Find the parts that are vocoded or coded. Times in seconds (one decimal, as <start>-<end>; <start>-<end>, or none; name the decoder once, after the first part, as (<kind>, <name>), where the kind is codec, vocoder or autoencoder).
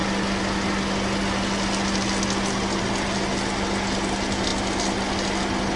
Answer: none